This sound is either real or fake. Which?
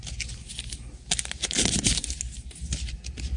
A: real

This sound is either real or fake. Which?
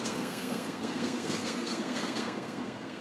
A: fake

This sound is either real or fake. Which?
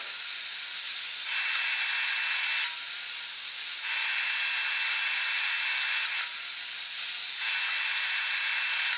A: real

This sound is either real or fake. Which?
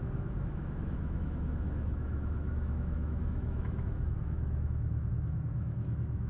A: fake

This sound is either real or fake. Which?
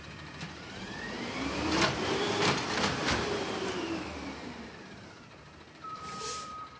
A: fake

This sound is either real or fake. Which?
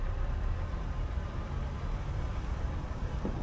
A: real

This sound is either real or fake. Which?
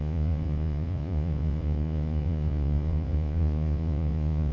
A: fake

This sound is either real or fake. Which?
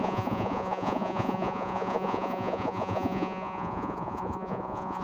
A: fake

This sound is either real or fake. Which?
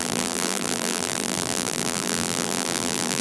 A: fake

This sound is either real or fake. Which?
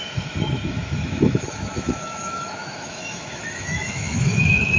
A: fake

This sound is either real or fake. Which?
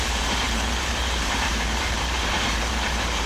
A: fake